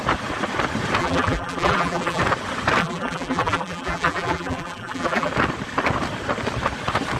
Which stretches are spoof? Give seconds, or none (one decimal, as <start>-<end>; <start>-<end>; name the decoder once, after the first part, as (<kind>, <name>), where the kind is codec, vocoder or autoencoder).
1.0-2.2 (vocoder, BigVGAN v2); 2.8-5.3